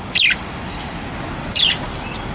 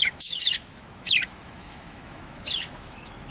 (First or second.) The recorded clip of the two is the first